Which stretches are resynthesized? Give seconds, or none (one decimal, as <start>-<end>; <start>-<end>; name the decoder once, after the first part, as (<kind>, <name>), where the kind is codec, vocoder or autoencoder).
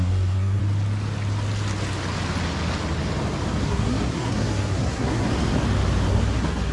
0.0-0.6 (codec, SNAC); 3.6-5.3; 6.1-6.7